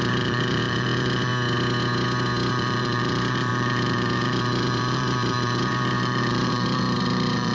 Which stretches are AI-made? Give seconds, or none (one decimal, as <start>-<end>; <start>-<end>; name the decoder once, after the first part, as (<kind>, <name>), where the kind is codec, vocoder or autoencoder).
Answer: 0.0-1.3 (vocoder, BigVGAN v2); 2.5-7.5